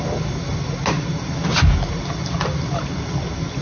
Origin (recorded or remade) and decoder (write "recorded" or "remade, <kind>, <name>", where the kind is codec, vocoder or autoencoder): recorded